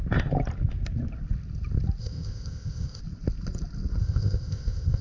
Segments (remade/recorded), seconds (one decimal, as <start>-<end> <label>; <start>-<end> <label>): 0.0-2.0 recorded; 2.0-3.0 remade; 3.0-4.0 recorded; 4.0-5.0 remade